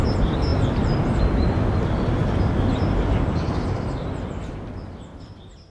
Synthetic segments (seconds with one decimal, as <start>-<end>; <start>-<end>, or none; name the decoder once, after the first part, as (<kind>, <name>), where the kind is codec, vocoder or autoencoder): none